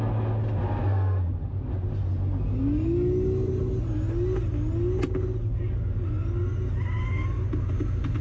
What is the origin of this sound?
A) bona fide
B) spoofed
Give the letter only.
A